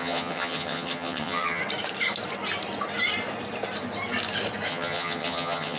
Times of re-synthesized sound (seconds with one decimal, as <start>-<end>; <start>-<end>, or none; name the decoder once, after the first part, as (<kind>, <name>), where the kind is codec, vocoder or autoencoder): 0.0-1.6 (vocoder, HiFi-GAN); 4.7-5.8